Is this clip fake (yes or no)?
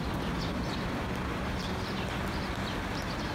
no